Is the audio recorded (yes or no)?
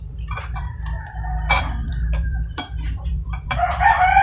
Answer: no